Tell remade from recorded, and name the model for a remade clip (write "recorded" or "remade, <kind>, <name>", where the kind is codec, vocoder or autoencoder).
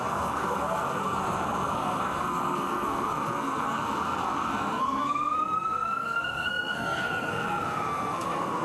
remade, codec, SNAC